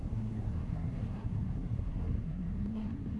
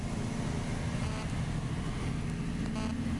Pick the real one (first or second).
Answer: second